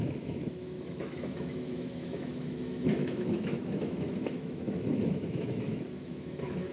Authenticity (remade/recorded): remade